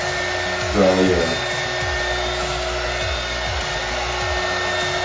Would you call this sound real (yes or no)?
yes